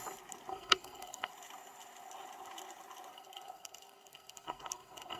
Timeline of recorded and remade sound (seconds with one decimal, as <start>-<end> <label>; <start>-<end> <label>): 0.0-0.5 recorded; 0.5-1.3 remade; 1.3-3.1 recorded; 3.1-5.2 remade